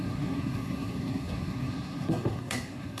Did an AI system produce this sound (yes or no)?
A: yes